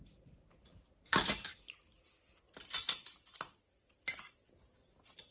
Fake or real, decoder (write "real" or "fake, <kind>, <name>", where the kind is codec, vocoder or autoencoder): real